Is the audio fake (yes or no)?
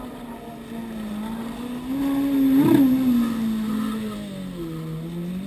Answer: no